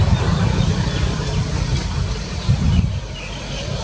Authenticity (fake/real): real